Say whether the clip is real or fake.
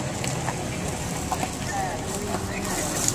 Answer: real